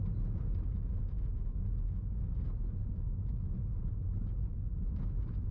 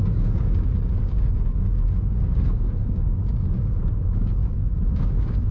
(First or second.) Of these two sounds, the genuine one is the first